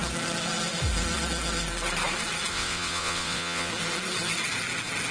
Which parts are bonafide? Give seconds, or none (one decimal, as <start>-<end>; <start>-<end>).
0.0-2.5; 3.7-5.1